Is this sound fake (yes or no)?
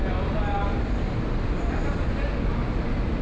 no